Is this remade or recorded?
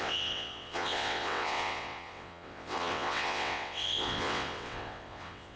remade